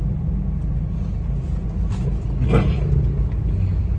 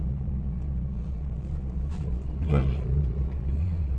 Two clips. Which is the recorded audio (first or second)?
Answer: first